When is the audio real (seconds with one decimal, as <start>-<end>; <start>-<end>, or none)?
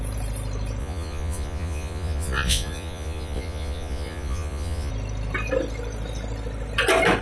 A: 0.0-0.8; 4.9-7.2